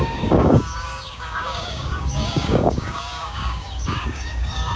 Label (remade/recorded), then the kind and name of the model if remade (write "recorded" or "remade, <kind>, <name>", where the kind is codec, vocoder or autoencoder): remade, codec, DAC